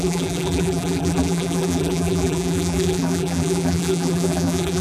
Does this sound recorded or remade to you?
remade